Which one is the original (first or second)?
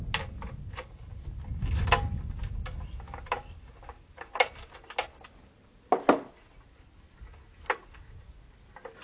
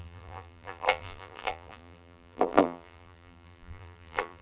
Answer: first